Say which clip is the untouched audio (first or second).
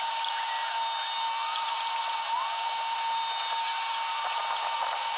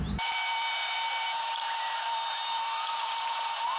first